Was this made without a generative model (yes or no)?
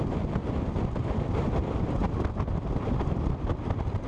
yes